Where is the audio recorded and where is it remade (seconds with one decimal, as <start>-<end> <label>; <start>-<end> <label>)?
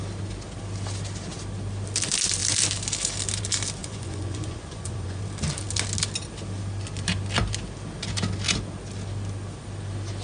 0.0-3.8 recorded; 3.8-5.2 remade; 5.2-10.2 recorded